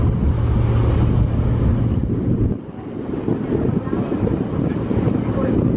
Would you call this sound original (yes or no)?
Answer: yes